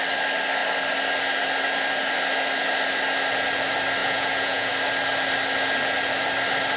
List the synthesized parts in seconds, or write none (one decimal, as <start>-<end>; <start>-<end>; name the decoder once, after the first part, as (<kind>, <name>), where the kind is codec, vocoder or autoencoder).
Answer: 4.0-4.7 (vocoder, Vocos)